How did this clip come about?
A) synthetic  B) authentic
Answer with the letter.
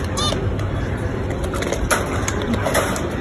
B